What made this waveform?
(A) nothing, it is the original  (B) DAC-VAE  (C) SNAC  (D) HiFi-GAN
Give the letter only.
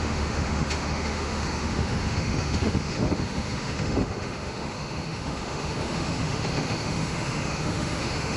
B